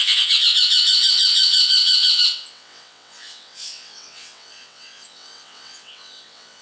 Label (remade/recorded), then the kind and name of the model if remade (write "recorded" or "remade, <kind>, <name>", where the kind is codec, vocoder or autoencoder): remade, vocoder, WaveNeXt